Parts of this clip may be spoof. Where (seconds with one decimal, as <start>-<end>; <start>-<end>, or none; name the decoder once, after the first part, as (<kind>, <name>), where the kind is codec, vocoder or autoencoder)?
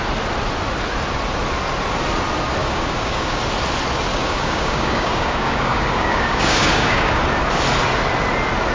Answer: 2.6-3.4 (codec, DAC); 4.1-7.2